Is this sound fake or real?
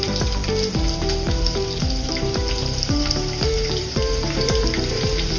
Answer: fake